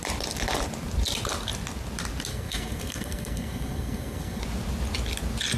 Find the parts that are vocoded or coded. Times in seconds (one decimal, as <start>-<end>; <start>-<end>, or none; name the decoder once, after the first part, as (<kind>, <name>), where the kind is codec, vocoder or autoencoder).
2.3-4.4 (codec, SNAC)